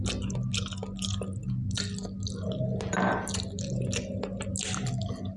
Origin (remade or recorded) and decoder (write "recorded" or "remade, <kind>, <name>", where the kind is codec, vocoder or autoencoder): recorded